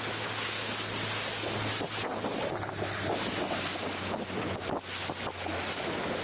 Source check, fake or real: real